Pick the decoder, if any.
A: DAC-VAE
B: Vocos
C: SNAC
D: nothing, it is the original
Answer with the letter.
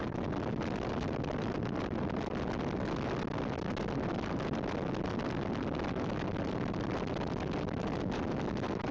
D